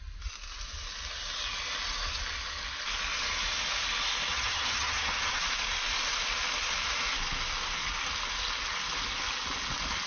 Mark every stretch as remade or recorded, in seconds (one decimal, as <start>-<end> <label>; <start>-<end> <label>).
0.0-4.3 recorded; 4.3-5.4 remade; 5.4-10.1 recorded

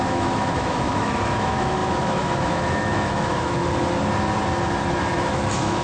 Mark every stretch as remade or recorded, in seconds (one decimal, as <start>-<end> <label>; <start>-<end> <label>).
0.0-3.6 remade; 3.6-5.0 recorded; 5.0-5.8 remade